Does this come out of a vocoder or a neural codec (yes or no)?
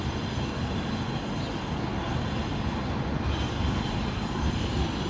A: no